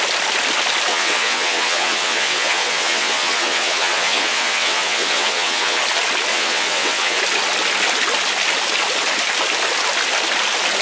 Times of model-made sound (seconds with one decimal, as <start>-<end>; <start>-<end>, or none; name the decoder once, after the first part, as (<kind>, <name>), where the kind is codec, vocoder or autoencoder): 0.9-5.8 (vocoder, WaveNeXt); 6.3-7.2